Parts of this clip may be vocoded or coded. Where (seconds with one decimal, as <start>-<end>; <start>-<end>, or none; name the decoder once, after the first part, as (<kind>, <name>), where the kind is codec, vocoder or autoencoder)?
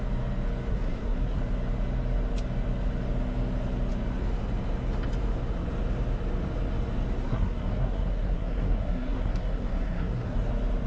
0.7-1.4 (codec, SNAC); 7.3-10.5